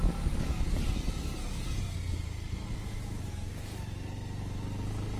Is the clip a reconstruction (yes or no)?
no